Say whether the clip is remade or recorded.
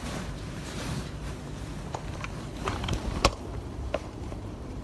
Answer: remade